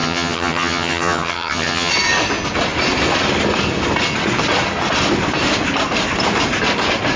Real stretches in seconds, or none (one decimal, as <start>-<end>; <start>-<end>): 1.9-7.2